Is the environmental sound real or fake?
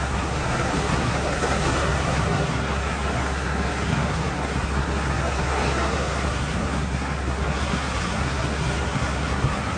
fake